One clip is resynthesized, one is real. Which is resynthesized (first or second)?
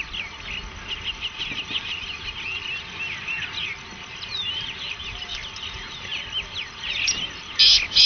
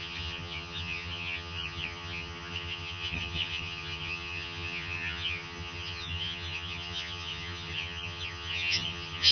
second